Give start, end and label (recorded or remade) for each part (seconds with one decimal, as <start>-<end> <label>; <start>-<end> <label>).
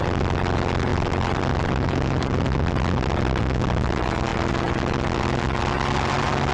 0.0-0.9 recorded; 0.9-3.4 remade; 3.4-6.5 recorded